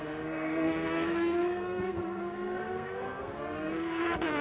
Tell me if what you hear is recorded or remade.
remade